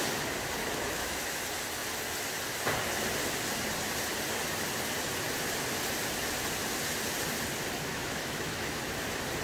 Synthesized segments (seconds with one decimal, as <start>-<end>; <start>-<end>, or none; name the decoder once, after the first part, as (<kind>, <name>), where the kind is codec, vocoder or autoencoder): 0.6-1.4 (autoencoder, DAC-VAE); 7.9-8.8